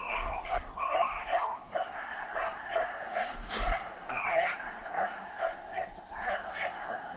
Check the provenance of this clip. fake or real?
fake